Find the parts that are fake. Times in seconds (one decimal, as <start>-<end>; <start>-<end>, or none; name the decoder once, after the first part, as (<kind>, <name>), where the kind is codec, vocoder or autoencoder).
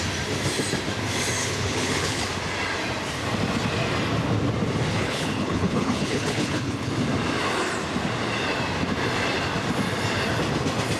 1.4-2.3 (codec, HILCodec); 4.9-6.9